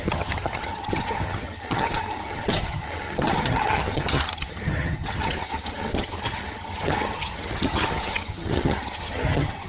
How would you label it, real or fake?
fake